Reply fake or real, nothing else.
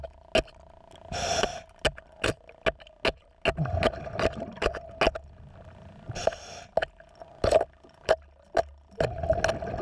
real